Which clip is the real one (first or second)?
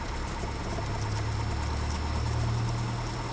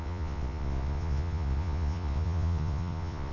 first